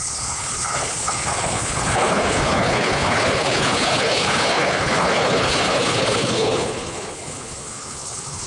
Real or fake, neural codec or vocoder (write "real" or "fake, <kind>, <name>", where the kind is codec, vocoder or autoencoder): fake, codec, HILCodec